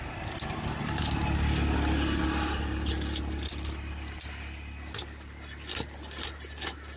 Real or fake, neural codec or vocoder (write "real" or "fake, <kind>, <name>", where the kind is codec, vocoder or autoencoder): real